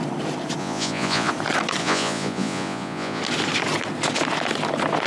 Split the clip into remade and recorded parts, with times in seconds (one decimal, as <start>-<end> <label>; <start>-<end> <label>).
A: 0.0-0.6 recorded; 0.6-1.3 remade; 1.3-1.8 recorded; 1.8-3.2 remade; 3.2-5.1 recorded